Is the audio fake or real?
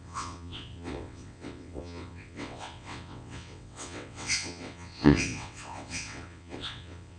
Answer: fake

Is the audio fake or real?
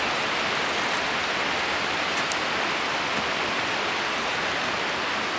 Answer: real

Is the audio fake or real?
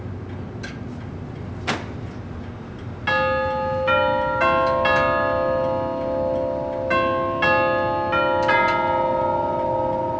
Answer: real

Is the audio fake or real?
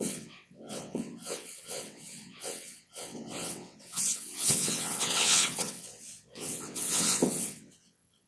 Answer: fake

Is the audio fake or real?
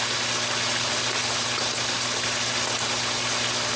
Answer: real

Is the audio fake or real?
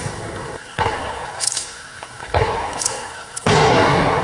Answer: fake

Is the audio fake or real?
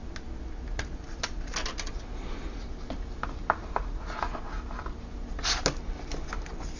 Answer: real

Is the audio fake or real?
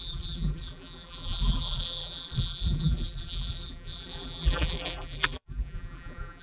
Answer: fake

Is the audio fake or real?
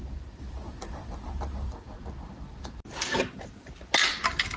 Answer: real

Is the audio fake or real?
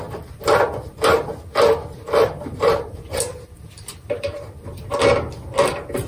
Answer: fake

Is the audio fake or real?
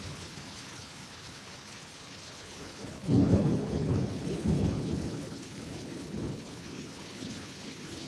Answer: fake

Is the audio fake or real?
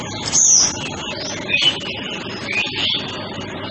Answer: real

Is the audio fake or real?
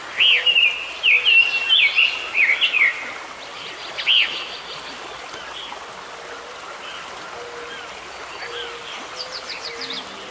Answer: real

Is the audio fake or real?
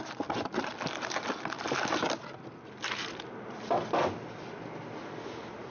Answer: real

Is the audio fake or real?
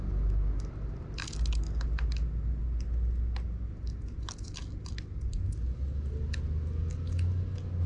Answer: real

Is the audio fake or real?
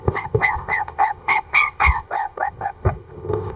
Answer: fake